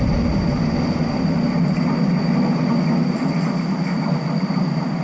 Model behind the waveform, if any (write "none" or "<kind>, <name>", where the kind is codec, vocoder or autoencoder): none